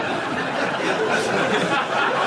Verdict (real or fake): real